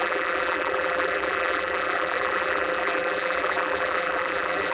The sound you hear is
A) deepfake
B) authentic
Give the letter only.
A